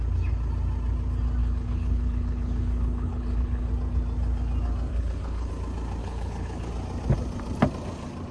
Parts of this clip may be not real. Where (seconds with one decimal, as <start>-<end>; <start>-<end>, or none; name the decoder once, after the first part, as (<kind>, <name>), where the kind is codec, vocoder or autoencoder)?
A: 1.4-3.7 (codec, HILCodec); 4.9-5.5; 6.0-6.7